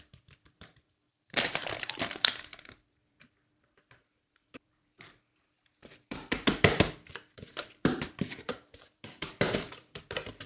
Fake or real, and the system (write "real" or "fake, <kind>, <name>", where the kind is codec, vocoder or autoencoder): fake, vocoder, BigVGAN v2